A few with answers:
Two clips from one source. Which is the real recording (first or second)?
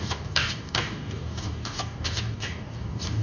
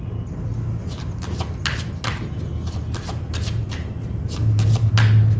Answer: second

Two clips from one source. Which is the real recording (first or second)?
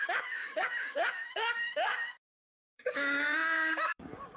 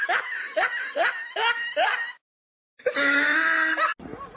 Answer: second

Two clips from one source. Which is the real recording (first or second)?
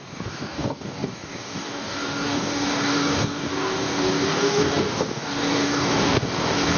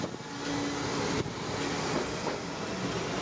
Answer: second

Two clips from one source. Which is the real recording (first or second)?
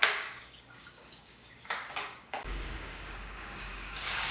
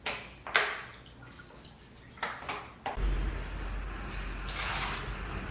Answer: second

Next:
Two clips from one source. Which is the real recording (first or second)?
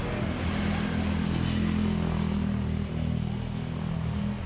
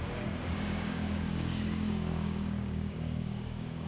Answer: first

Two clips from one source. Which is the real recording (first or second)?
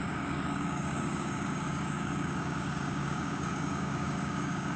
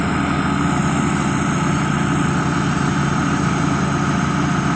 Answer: second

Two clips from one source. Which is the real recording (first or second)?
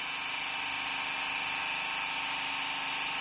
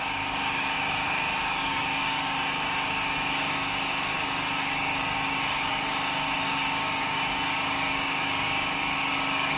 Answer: first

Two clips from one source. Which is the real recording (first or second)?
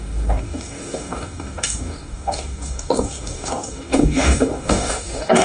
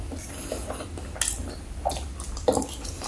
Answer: second